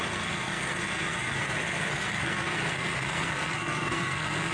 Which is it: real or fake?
fake